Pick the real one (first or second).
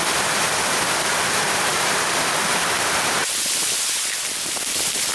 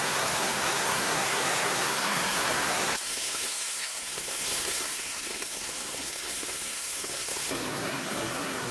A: first